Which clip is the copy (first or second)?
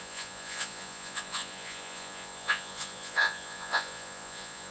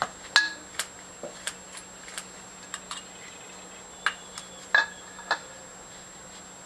first